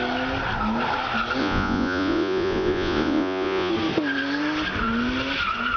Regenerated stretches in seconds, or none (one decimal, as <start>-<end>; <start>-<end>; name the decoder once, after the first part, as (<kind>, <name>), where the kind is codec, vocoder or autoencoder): 1.4-3.7 (vocoder, Vocos)